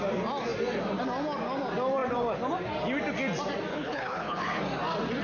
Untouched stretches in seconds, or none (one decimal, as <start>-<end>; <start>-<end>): 0.0-3.7; 4.6-5.2